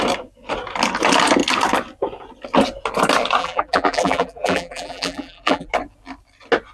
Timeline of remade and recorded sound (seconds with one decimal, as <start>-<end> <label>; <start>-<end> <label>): 0.0-3.4 recorded; 3.4-5.7 remade; 5.7-6.7 recorded